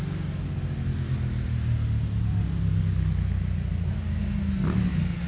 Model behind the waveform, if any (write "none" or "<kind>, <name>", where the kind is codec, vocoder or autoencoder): none